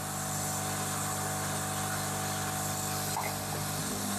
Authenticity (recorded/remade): recorded